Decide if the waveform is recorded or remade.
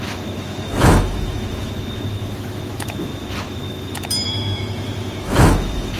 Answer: remade